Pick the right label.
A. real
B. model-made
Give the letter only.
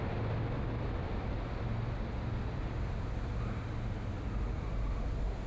A